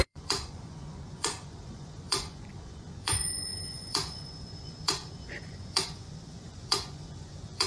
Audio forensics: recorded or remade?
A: remade